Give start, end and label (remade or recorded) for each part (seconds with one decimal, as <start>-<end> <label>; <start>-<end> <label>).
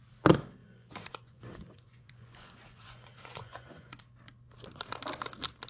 0.0-0.6 recorded; 0.6-4.0 remade; 4.0-5.7 recorded